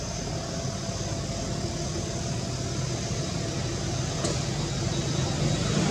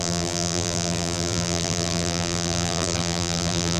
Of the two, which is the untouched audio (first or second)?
first